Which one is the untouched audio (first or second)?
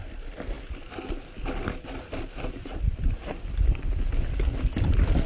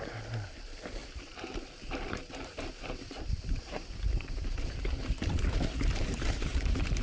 first